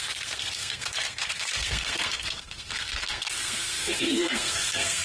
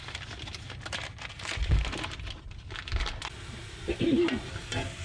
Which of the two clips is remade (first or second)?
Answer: first